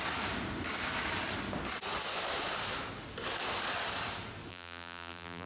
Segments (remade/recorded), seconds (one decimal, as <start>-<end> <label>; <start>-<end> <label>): 0.0-4.5 recorded; 4.5-5.5 remade